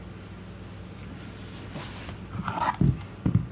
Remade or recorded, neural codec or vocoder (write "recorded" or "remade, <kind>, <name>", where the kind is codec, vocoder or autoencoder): recorded